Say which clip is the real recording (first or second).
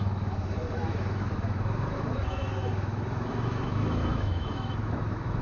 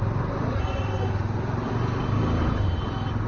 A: second